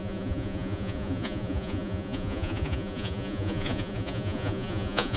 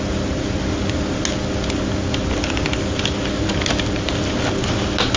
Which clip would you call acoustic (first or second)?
second